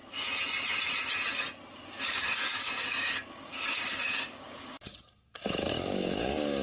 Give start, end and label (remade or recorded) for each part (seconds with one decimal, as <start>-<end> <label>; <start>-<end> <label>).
0.0-1.7 recorded; 1.7-6.6 remade